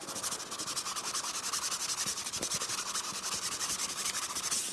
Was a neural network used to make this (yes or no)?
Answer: no